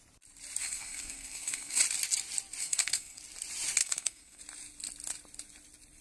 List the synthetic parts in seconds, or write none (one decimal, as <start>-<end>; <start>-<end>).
0.6-1.8; 2.6-3.2; 3.8-4.4